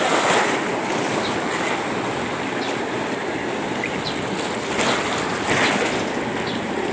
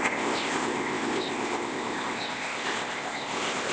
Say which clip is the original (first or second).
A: first